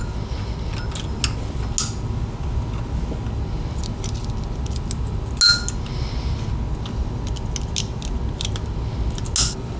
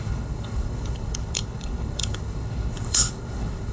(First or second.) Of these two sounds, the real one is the first